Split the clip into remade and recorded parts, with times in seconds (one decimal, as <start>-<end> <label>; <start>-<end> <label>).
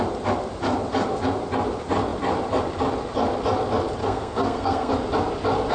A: 0.0-4.0 recorded; 4.0-4.9 remade; 4.9-5.7 recorded